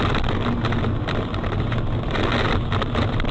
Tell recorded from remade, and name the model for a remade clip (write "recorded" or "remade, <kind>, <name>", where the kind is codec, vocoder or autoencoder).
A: recorded